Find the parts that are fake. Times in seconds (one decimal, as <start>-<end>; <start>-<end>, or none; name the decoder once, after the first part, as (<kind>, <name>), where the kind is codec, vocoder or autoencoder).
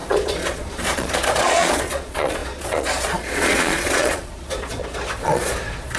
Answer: 0.0-6.0 (vocoder, Vocos)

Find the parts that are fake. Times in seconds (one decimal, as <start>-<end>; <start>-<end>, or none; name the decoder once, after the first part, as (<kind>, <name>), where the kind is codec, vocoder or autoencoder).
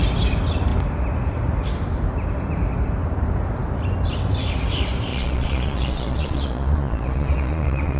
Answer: 5.1-8.0 (vocoder, Vocos)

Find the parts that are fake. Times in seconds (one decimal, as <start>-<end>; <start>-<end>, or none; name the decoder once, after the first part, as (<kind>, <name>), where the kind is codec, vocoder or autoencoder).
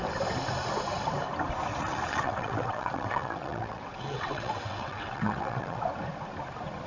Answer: 1.7-5.8 (vocoder, WaveNeXt)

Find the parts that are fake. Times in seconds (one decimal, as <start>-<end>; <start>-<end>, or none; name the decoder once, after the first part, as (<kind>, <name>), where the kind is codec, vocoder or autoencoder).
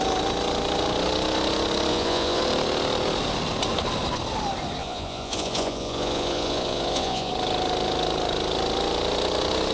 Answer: 1.9-2.4 (vocoder, Vocos); 4.8-7.3